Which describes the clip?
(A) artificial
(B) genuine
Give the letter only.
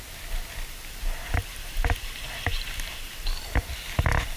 B